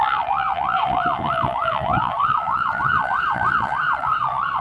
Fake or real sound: fake